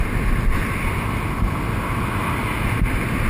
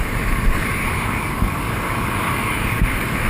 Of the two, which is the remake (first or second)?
second